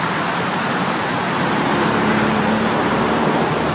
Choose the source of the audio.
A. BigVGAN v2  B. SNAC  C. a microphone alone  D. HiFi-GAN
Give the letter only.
A